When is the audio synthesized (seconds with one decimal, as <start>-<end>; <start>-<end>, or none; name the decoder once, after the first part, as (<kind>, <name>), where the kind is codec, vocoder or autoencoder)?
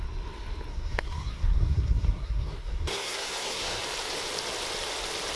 0.7-3.8 (codec, SNAC)